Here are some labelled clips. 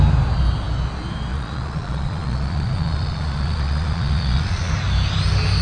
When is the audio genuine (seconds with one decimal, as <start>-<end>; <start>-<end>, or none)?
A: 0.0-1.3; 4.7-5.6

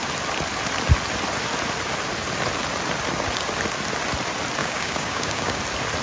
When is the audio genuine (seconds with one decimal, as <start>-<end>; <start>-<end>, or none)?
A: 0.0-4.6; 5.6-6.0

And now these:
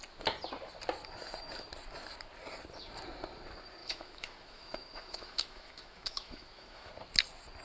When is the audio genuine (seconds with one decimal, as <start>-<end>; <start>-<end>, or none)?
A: 0.0-3.8; 6.9-7.6

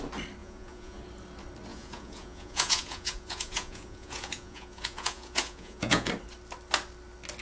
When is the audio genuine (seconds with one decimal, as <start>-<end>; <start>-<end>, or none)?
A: 0.0-0.4; 1.0-1.7; 6.1-7.4

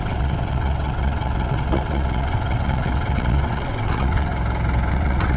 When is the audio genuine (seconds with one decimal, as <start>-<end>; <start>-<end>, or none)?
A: 4.3-4.9

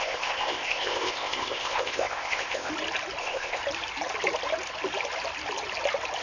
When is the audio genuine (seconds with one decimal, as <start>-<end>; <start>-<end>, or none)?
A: 2.7-3.2; 3.6-6.2

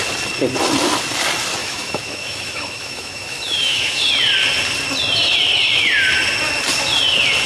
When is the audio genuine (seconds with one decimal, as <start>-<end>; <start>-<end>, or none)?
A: 0.0-1.6; 4.0-7.5